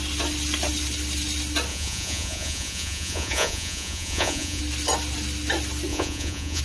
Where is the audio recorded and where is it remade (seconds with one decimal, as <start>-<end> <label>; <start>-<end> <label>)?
0.0-1.7 recorded; 1.7-4.6 remade; 4.6-5.9 recorded; 5.9-6.6 remade